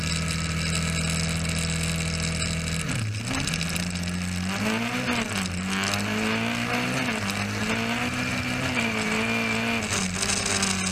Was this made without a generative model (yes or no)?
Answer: yes